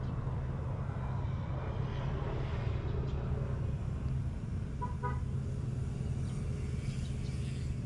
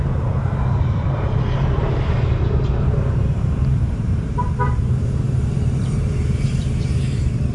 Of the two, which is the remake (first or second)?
second